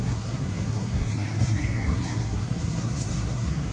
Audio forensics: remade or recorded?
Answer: remade